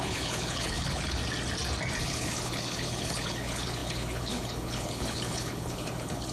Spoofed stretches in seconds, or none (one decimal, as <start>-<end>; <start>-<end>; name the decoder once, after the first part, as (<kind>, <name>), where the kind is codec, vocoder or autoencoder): 0.0-1.2 (codec, HILCodec); 2.0-6.3